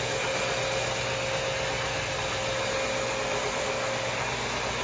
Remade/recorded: recorded